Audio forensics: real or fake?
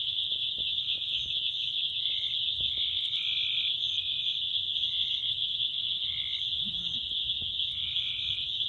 real